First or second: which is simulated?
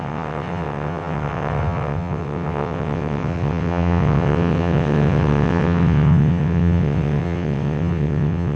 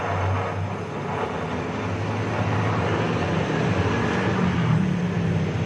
first